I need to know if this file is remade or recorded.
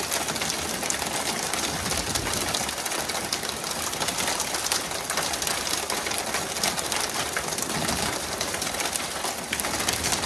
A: recorded